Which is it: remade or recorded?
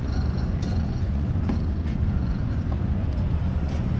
remade